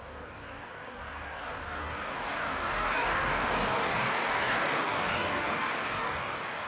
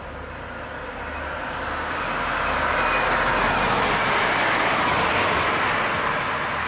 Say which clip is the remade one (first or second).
first